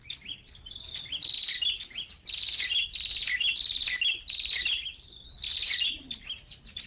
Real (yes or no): yes